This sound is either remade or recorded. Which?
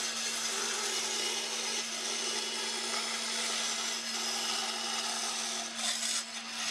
recorded